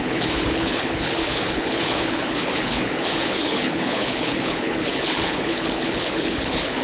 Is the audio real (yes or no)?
no